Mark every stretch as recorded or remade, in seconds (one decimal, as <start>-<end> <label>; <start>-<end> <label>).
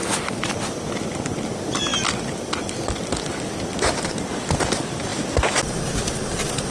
0.0-6.7 recorded